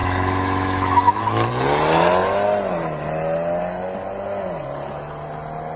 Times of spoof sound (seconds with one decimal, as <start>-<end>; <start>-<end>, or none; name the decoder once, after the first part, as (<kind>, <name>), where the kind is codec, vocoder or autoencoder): 0.0-1.5 (autoencoder, DAC-VAE)